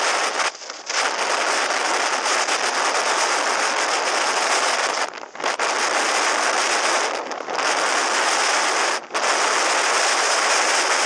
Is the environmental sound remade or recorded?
recorded